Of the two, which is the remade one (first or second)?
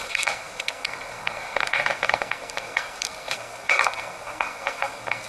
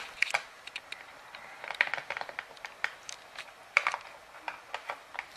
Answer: first